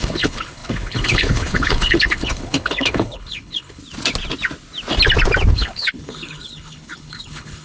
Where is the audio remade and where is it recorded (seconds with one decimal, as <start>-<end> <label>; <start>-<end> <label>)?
0.0-3.8 remade; 3.8-5.5 recorded; 5.5-7.6 remade